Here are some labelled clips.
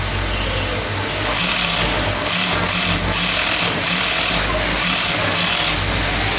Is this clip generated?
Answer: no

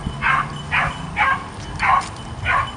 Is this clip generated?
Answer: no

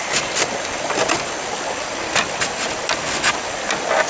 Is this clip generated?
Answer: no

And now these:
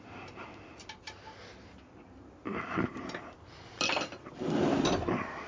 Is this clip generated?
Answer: no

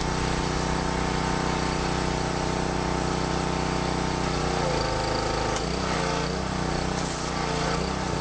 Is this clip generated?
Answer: no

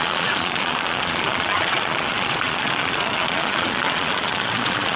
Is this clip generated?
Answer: yes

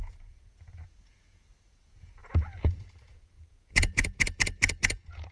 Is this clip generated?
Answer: yes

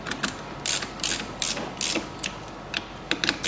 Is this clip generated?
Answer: no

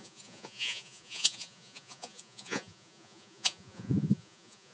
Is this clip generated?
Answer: yes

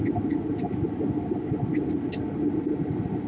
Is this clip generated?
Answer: no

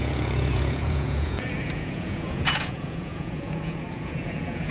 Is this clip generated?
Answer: yes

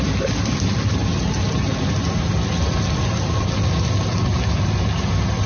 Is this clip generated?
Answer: no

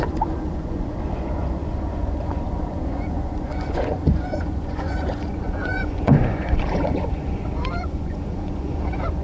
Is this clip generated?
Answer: yes